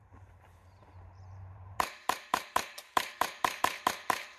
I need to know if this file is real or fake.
fake